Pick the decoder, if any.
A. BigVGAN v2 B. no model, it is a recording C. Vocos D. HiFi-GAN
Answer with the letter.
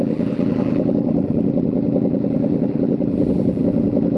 A